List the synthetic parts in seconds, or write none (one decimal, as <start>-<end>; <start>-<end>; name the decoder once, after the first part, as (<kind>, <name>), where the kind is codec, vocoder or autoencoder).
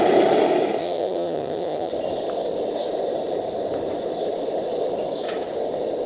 0.8-1.9 (vocoder, HiFi-GAN)